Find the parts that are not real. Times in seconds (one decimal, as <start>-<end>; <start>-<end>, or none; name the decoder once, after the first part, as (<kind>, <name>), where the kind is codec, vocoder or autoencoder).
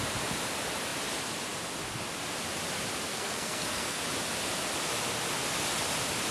3.1-4.0 (codec, SNAC)